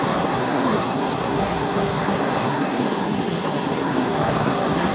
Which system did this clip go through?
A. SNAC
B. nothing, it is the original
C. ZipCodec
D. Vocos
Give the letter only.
A